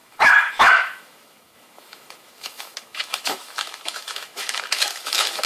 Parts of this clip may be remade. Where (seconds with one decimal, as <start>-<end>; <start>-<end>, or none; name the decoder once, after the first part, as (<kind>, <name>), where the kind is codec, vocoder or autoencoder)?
0.0-5.5 (autoencoder, DAC-VAE)